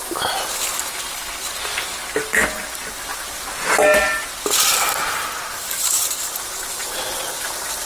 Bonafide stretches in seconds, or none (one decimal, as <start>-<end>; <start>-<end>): 0.0-3.1; 3.8-5.6; 7.2-7.9